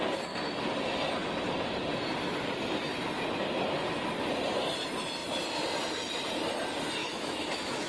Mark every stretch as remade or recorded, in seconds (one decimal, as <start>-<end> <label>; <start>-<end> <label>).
0.0-7.0 recorded; 7.0-7.9 remade